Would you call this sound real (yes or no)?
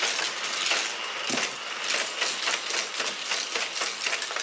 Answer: yes